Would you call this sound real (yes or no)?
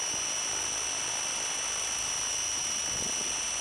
yes